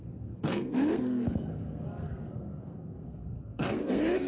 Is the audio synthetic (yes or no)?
yes